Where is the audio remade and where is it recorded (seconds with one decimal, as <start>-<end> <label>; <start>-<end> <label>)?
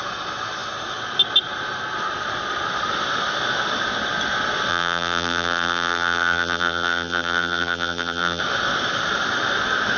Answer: 0.0-4.7 recorded; 4.7-8.4 remade; 8.4-10.0 recorded